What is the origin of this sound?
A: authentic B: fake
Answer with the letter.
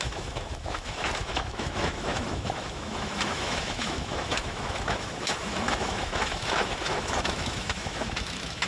B